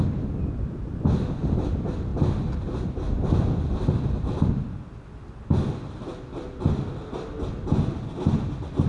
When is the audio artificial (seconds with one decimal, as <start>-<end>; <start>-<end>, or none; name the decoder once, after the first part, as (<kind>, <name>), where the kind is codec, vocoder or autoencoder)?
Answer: none